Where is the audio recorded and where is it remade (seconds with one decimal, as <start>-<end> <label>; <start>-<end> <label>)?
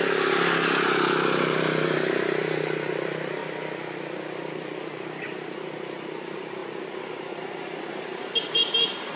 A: 0.0-3.4 remade; 3.4-4.5 recorded; 4.5-9.2 remade